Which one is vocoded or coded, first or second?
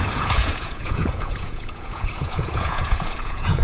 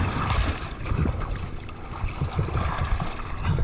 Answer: first